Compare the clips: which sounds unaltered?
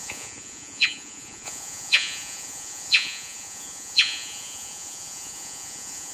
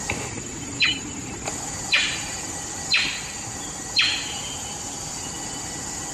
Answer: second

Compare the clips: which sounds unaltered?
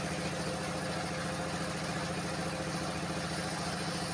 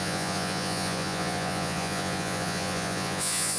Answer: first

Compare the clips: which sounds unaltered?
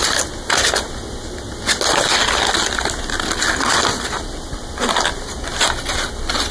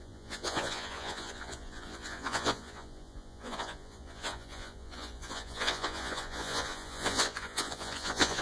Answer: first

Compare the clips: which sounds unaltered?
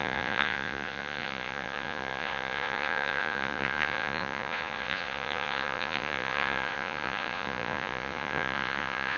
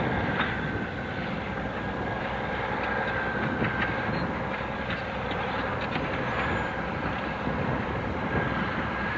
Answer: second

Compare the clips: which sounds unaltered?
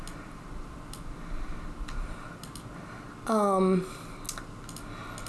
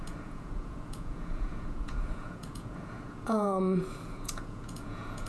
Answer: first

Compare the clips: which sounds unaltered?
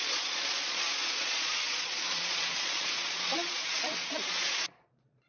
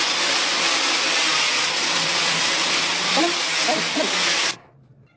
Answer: second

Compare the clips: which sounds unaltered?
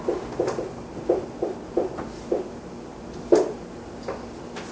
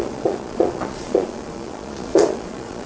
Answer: first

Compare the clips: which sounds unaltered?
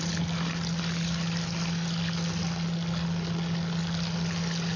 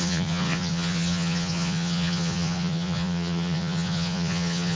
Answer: first